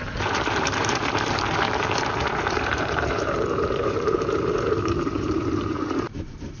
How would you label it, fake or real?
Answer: fake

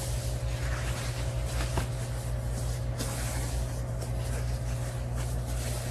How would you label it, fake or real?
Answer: real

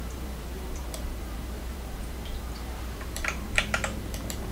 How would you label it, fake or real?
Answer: fake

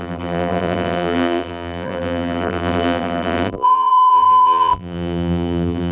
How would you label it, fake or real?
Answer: fake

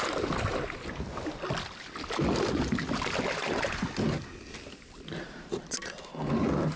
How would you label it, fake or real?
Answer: real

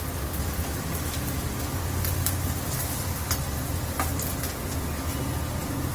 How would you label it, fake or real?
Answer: real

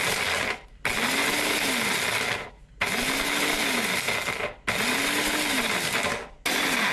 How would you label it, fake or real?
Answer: real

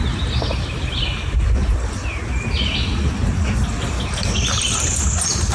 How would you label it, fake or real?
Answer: real